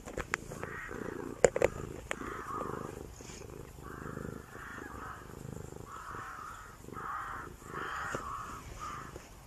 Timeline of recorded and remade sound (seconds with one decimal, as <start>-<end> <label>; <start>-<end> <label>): 0.0-9.5 recorded